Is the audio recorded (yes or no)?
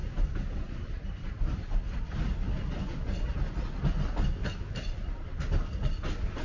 yes